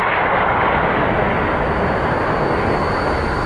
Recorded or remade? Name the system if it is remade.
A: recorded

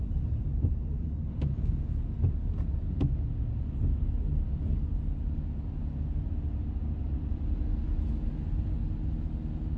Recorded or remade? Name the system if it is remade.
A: recorded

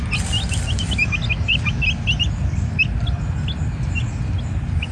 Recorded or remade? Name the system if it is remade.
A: recorded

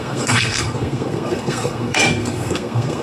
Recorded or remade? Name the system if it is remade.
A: remade, codec, SNAC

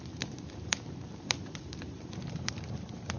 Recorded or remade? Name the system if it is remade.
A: remade, vocoder, BigVGAN v2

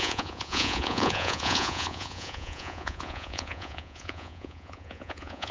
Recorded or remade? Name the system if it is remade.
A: remade, vocoder, Vocos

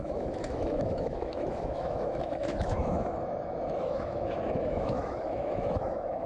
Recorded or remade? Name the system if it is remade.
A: remade, autoencoder, DAC-VAE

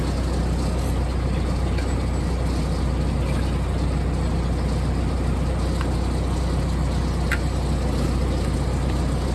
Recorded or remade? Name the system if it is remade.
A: recorded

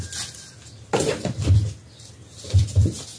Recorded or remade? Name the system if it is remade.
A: recorded